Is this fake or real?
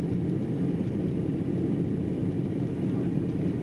real